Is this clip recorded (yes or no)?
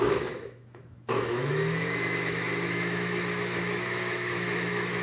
no